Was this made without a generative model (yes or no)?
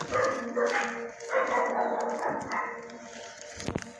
yes